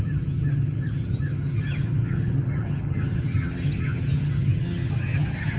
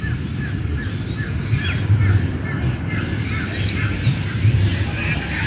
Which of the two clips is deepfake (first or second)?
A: first